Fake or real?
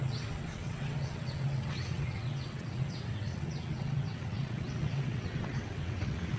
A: fake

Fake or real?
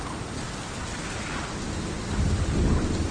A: real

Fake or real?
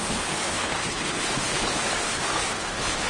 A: fake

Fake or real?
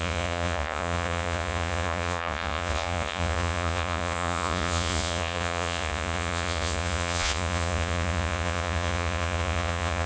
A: fake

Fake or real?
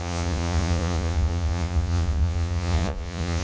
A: fake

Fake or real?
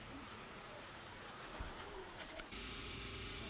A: fake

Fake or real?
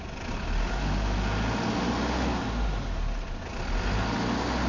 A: real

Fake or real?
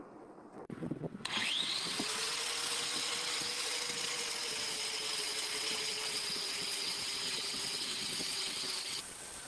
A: fake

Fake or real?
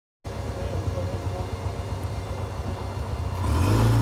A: real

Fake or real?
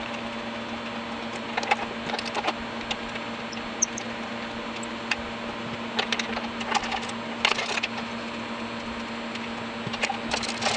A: real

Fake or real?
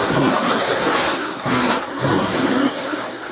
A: fake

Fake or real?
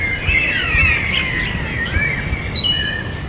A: real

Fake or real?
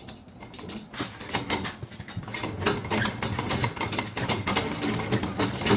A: real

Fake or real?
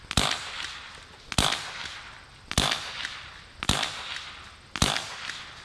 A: real